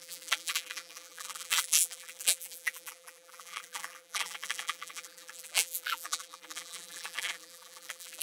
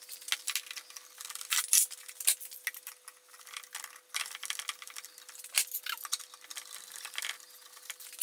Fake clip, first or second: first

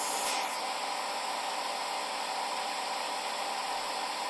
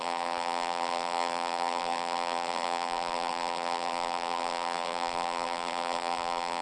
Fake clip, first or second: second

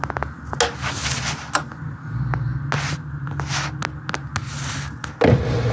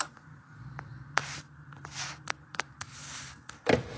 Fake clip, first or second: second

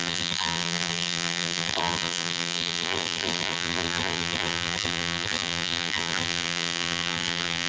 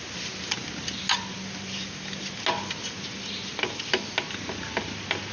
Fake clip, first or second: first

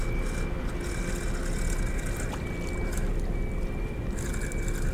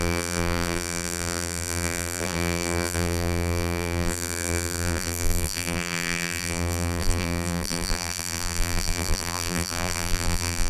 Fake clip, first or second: second